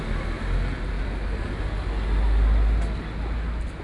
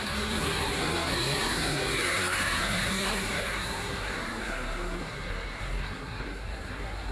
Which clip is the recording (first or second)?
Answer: first